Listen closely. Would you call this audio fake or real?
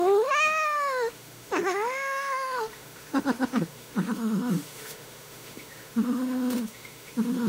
fake